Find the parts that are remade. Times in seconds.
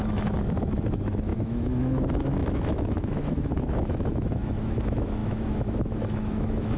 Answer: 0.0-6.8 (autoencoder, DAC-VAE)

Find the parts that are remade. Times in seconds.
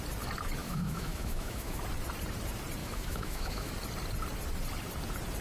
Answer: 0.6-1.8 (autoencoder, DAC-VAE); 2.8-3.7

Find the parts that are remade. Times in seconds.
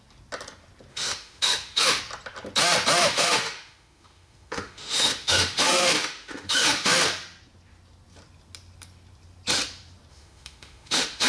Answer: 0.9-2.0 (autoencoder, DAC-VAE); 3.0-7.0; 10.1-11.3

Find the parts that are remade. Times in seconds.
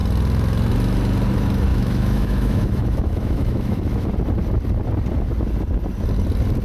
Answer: 1.7-4.1 (autoencoder, DAC-VAE)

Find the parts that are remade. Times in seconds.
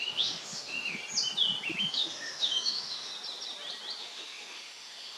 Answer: 0.0-1.0 (autoencoder, DAC-VAE); 1.8-3.1; 4.0-5.2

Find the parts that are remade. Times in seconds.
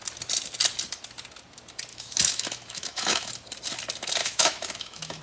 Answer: 1.9-3.3 (autoencoder, DAC-VAE); 4.2-5.2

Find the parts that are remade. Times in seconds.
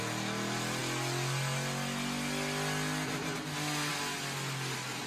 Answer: none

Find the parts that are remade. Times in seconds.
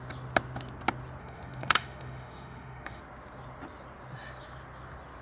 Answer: 1.2-3.0 (autoencoder, DAC-VAE)